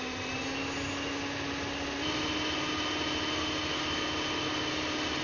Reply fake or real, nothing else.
real